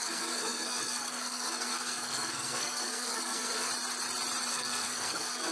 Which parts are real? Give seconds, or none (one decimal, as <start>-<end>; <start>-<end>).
3.7-4.5

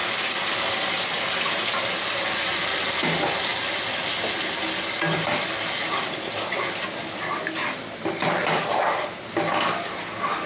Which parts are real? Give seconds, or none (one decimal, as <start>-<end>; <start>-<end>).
0.0-10.5